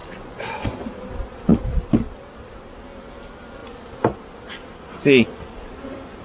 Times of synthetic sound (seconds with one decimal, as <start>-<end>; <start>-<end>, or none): 0.0-0.8